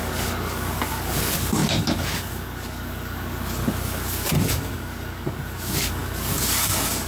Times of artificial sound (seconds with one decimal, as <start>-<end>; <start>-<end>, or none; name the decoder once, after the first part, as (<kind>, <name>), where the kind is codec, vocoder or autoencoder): 0.0-7.1 (codec, DAC)